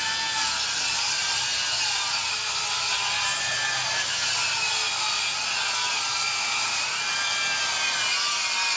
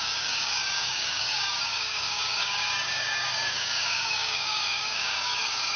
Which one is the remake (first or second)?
second